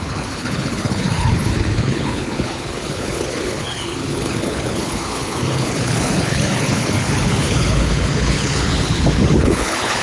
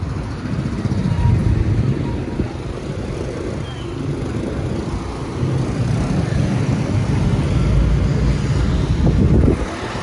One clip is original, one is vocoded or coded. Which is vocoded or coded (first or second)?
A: first